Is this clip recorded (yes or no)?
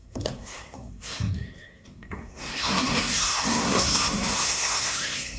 no